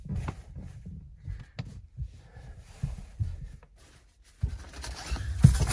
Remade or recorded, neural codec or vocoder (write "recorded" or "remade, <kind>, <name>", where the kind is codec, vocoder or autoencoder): recorded